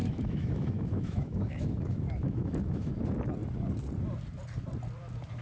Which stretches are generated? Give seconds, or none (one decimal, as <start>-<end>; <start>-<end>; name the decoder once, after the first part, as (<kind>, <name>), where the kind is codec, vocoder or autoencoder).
0.0-2.9 (autoencoder, DAC-VAE)